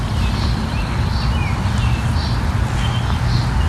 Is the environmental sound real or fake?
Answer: real